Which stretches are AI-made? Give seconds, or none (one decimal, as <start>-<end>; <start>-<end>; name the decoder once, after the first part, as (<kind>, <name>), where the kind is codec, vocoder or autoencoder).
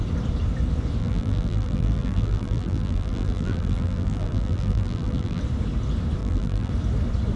1.0-5.4 (vocoder, BigVGAN v2); 6.2-6.7